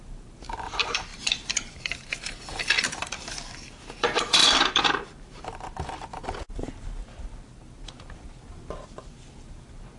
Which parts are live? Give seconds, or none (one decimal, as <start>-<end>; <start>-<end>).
none